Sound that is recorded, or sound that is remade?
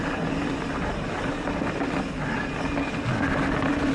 recorded